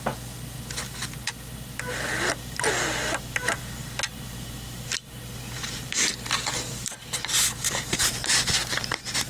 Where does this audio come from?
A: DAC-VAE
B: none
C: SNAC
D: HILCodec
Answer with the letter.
B